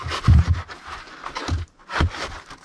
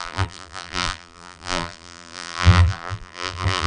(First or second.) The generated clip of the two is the second